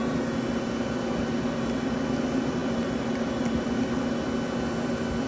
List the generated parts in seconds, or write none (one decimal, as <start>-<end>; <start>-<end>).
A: none